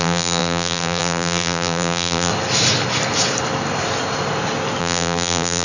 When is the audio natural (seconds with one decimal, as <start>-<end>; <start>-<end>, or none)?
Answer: 2.3-4.8